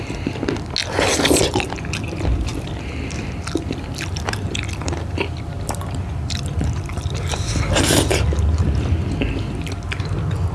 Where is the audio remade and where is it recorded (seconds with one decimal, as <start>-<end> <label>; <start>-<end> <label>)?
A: 0.0-2.5 recorded; 2.5-7.5 remade; 7.5-10.5 recorded